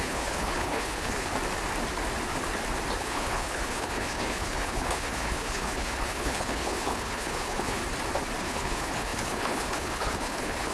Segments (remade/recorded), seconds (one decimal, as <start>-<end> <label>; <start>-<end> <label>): 0.0-1.3 remade; 1.3-3.0 recorded; 3.0-7.8 remade; 7.8-8.4 recorded; 8.4-10.7 remade